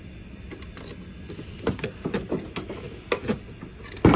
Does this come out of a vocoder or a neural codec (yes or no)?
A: no